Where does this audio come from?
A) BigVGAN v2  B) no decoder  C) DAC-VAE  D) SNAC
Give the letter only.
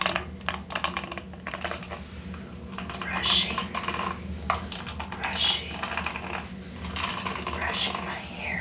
B